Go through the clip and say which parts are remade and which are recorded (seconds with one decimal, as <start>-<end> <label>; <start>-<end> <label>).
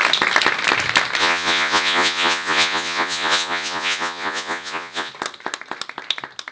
0.0-1.2 recorded; 1.2-5.1 remade; 5.1-6.5 recorded